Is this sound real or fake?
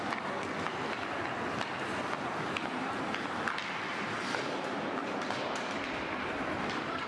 real